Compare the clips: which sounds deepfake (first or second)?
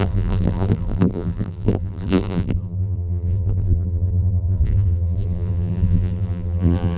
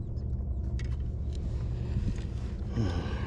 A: first